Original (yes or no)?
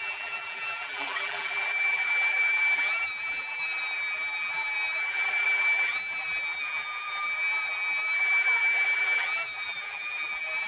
no